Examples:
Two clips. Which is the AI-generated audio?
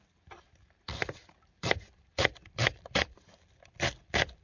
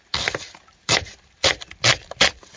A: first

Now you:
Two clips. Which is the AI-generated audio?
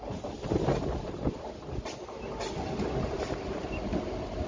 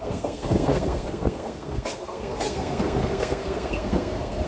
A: second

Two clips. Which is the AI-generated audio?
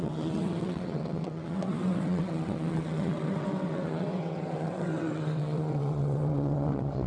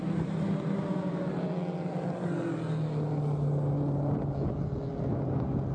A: first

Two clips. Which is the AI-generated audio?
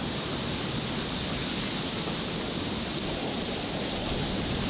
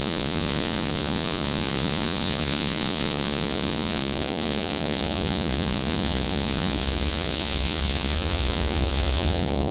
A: second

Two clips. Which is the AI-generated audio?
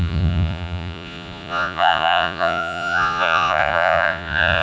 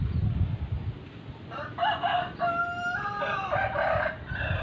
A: first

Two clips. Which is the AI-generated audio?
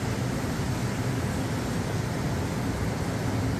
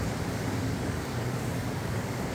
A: second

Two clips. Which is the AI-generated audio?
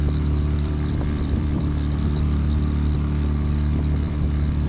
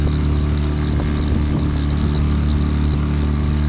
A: first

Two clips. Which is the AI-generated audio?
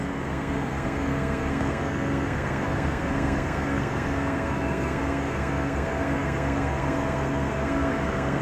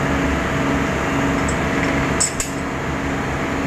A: first